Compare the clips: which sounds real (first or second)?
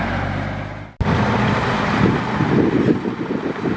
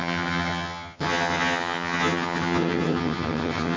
first